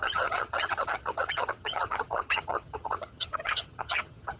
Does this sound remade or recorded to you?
remade